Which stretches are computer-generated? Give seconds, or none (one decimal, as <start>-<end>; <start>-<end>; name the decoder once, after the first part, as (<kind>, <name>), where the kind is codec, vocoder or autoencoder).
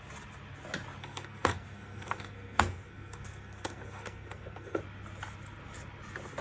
1.0-4.8 (codec, SNAC)